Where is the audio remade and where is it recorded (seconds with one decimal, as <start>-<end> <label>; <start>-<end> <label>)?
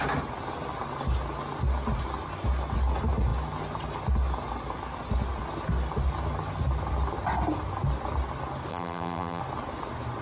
0.0-8.7 recorded; 8.7-9.4 remade; 9.4-10.2 recorded